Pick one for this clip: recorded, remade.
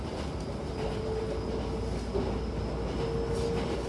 recorded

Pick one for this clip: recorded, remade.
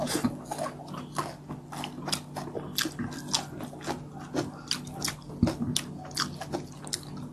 recorded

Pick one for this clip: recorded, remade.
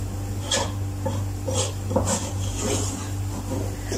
recorded